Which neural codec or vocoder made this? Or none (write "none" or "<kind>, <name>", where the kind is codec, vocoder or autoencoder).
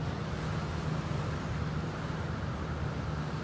none